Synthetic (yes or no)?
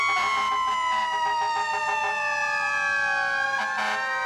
no